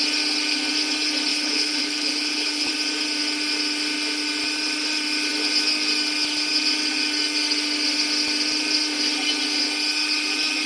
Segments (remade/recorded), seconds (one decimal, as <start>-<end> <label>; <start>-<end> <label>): 0.0-1.3 recorded; 1.3-2.7 remade; 2.7-10.7 recorded

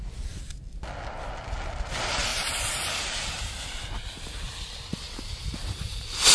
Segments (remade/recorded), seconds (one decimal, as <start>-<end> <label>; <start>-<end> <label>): 0.0-2.3 recorded; 2.3-3.4 remade; 3.4-4.9 recorded; 4.9-6.3 remade

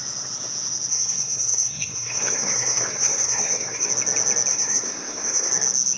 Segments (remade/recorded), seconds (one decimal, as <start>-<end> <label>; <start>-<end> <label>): 0.0-0.9 recorded; 0.9-3.9 remade; 3.9-4.5 recorded; 4.5-5.5 remade; 5.5-6.0 recorded

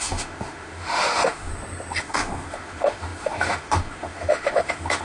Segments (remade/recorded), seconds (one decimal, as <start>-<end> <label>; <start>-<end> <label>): 0.0-1.5 remade; 1.5-2.0 recorded; 2.0-5.0 remade

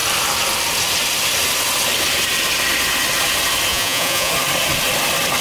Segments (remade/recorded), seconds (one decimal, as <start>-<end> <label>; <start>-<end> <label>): 0.0-3.7 recorded; 3.7-4.3 remade; 4.3-5.4 recorded

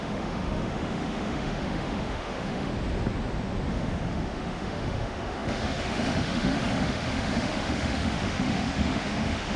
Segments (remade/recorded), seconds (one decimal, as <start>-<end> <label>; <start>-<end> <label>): 0.0-2.7 remade; 2.7-3.7 recorded; 3.7-9.6 remade